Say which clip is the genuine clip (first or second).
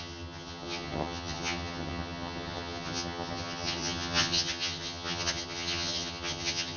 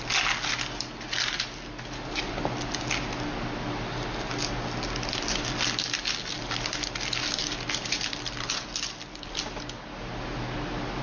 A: second